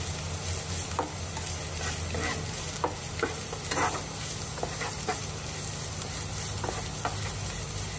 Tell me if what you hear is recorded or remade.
recorded